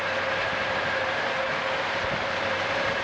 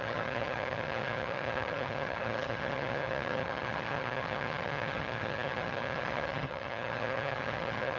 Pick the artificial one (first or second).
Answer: second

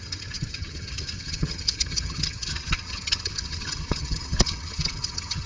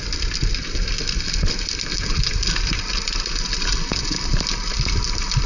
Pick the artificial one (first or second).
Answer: first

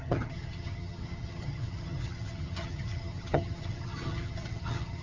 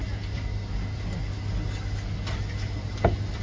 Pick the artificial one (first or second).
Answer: first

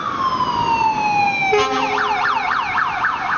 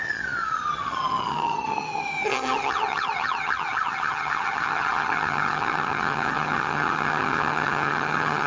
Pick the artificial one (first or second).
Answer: second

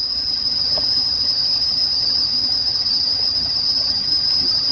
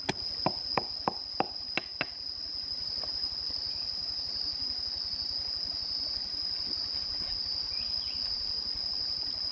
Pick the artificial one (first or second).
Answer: first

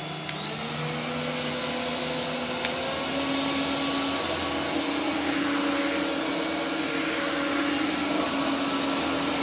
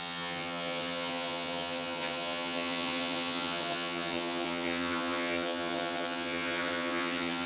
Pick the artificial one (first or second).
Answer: second